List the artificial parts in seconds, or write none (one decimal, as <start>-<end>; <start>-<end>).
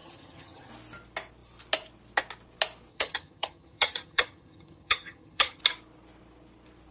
0.0-0.7; 2.9-5.6